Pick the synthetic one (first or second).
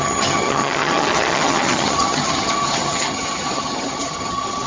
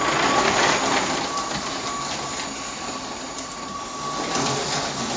first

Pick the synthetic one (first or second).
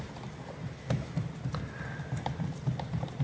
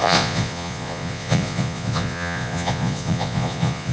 second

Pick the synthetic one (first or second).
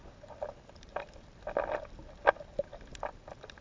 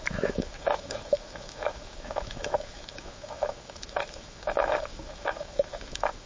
second